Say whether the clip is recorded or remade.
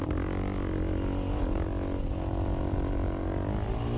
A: recorded